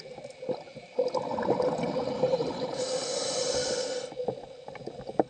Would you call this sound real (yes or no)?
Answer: yes